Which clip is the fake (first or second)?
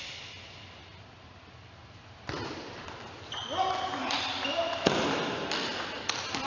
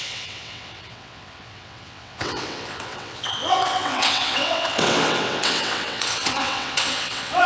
second